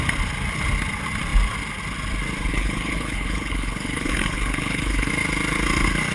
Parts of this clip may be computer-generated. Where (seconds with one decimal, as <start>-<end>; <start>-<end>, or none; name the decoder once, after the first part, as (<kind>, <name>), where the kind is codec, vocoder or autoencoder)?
2.5-5.1 (codec, HILCodec)